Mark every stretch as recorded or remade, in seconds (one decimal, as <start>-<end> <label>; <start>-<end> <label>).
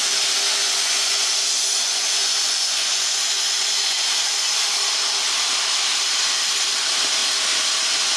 0.0-0.6 recorded; 0.6-4.5 remade; 4.5-8.2 recorded